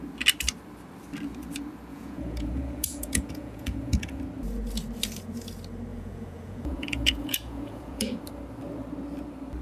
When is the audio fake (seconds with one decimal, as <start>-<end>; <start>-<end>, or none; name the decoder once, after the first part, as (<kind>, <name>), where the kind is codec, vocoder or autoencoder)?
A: 1.9-4.2 (vocoder, Vocos); 5.9-8.2